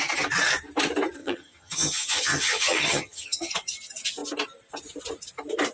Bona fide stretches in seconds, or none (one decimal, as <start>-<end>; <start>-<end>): 0.0-1.2; 3.5-5.7